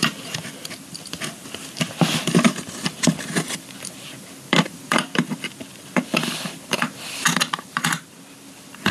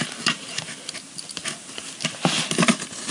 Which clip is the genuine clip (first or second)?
second